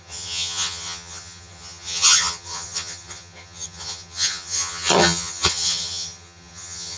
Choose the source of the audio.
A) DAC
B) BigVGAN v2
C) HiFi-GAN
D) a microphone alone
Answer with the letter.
C